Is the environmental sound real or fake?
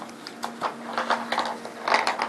real